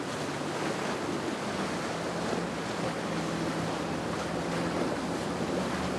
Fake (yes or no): no